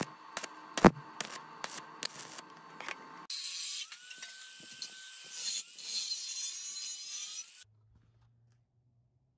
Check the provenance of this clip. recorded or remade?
recorded